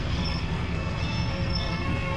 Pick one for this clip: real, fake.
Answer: fake